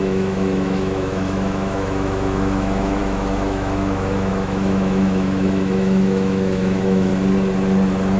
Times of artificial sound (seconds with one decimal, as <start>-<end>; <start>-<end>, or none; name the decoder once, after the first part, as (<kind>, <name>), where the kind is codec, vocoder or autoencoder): 0.0-7.1 (autoencoder, DAC-VAE)